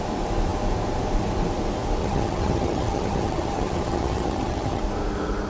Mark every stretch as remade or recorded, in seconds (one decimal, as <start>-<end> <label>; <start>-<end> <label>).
0.0-2.0 recorded; 2.0-4.8 remade; 4.8-5.5 recorded